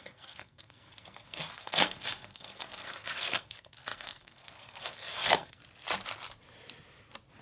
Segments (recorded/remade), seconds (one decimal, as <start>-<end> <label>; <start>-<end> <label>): 0.0-5.6 remade; 5.6-7.4 recorded